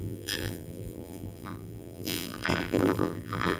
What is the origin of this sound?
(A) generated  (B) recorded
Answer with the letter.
A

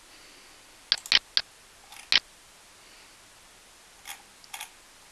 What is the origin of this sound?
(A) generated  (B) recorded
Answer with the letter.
B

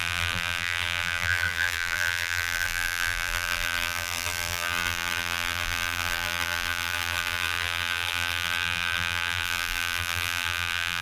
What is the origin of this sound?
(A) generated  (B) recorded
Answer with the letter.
A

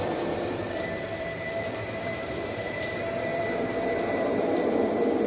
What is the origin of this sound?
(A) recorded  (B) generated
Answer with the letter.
B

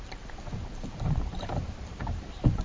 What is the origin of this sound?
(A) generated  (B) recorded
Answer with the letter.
A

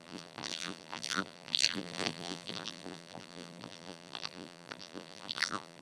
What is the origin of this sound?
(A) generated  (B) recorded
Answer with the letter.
A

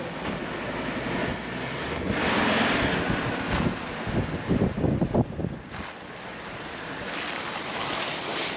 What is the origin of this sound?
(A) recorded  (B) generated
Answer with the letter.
A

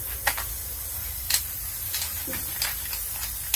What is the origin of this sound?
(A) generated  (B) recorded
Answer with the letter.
B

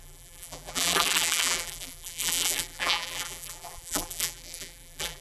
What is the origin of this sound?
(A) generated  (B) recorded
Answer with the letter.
A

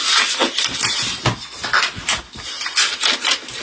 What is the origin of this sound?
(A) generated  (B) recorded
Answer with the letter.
B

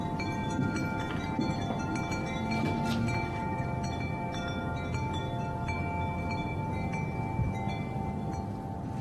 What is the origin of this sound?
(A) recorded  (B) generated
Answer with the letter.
A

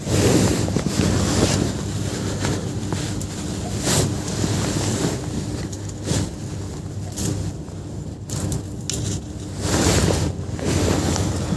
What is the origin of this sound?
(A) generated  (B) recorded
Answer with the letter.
B